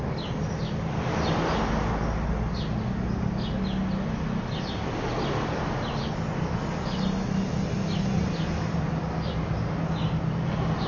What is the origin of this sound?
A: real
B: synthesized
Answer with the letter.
A